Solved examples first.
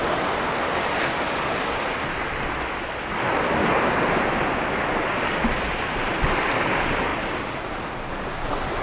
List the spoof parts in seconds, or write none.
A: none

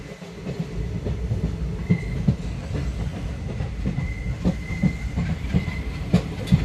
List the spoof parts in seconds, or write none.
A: none

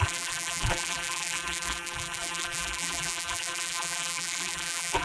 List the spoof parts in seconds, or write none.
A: 0.0-5.0

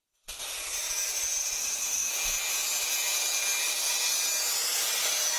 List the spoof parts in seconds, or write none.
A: 1.6-2.1

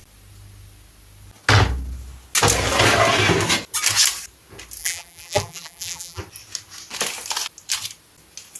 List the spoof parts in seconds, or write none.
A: 4.8-6.2

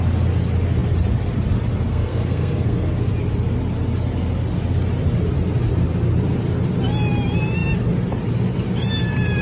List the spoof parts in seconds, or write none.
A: 1.9-3.1

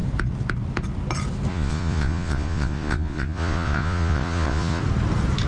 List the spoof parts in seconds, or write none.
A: 1.5-4.8